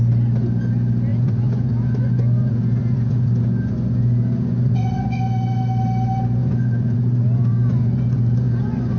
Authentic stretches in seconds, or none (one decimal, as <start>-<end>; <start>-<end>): 0.0-1.1; 5.2-6.4

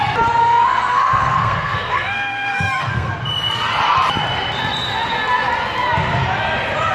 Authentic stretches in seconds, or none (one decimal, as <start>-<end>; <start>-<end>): 0.0-0.4; 3.1-6.9

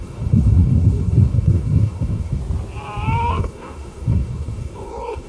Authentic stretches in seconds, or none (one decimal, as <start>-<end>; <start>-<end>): 2.4-3.3

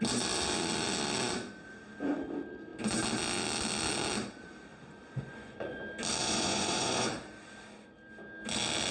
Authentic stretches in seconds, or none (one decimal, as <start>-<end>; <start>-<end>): 0.0-4.7; 5.8-6.2; 7.1-8.9

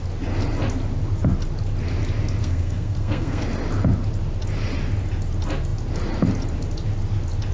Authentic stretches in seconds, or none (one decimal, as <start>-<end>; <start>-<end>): 0.0-2.4; 3.4-7.5